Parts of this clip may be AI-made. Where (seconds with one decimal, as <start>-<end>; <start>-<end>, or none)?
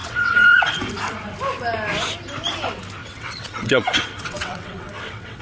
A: 0.0-0.7; 3.0-5.4